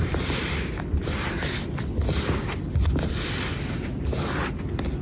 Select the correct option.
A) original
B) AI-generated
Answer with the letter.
A